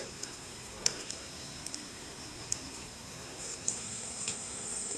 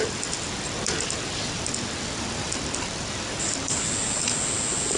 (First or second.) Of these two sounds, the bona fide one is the second